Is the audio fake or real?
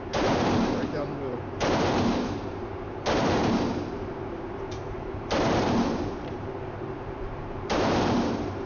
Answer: fake